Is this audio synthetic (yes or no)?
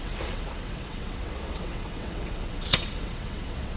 yes